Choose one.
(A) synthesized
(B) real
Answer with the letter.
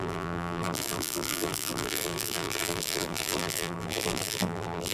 A